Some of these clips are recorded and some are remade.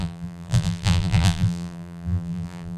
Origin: remade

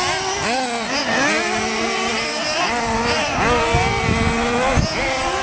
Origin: recorded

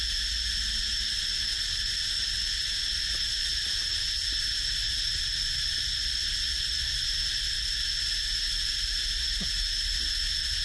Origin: recorded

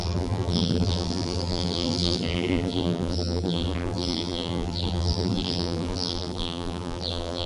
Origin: remade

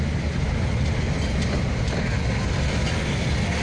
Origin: recorded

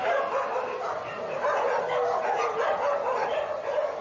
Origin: recorded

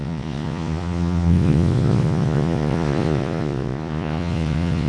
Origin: remade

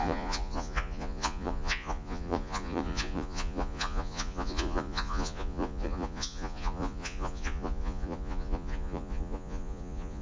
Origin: remade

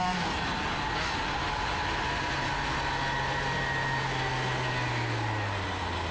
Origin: recorded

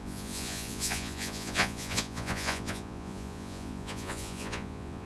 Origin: remade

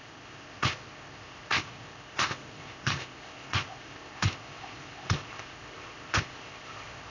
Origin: remade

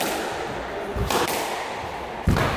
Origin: remade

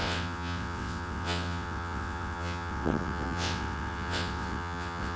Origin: remade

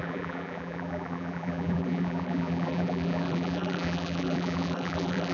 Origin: remade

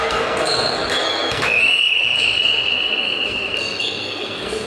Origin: remade